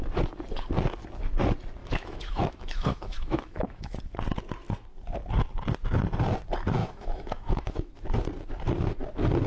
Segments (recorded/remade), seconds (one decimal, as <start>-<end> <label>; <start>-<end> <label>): 0.0-1.8 recorded; 1.8-4.0 remade; 4.0-6.8 recorded; 6.8-8.0 remade; 8.0-9.5 recorded